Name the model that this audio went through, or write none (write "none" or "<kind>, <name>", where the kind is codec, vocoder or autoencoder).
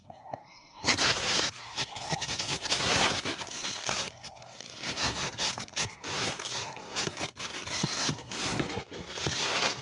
codec, SNAC